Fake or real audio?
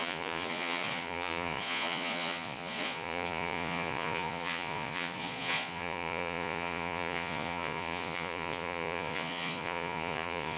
fake